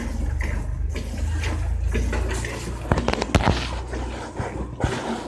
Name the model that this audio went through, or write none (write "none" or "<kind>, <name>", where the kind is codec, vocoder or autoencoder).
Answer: none